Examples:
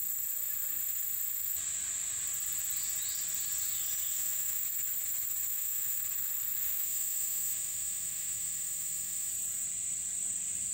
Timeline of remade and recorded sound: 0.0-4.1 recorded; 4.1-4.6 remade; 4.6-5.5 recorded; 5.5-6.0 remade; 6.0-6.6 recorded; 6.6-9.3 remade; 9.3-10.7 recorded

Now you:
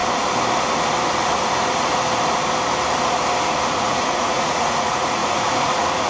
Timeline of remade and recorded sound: 0.0-3.7 recorded; 3.7-6.1 remade

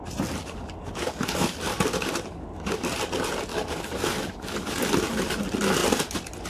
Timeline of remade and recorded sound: 0.0-0.4 recorded; 0.4-2.9 remade; 2.9-3.5 recorded; 3.5-4.8 remade; 4.8-6.5 recorded